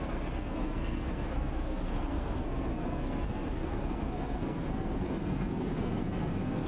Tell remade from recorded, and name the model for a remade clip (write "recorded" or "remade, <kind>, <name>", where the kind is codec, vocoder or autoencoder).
remade, codec, SNAC